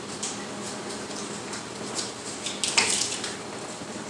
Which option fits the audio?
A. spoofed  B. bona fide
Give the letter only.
B